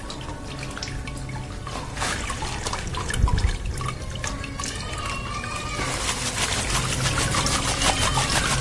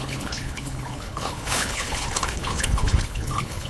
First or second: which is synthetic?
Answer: second